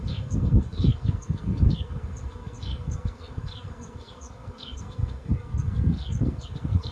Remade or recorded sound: remade